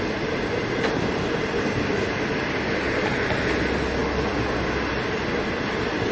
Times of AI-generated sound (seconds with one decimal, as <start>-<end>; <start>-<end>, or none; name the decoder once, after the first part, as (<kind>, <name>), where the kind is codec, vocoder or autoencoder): none